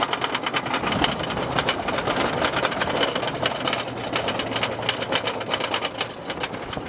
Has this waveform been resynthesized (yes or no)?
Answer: no